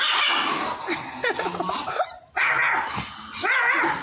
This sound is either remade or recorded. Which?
recorded